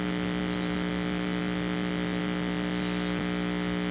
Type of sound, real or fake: real